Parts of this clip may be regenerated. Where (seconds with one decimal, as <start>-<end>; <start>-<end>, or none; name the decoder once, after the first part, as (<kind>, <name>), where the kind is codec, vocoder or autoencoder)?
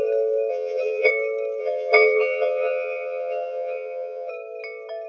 0.5-1.1 (vocoder, HiFi-GAN); 1.6-4.3